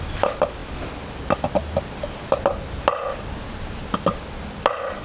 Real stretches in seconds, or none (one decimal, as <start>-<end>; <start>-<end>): 0.0-5.0